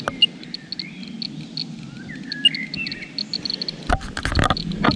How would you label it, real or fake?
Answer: real